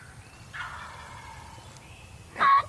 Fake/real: real